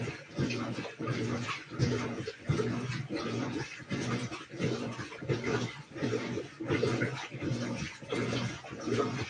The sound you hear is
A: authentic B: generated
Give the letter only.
B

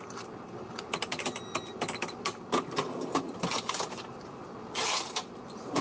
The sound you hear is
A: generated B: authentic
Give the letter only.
B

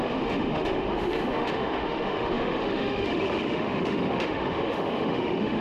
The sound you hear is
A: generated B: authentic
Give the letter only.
A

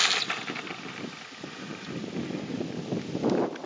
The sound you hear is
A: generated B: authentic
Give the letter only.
B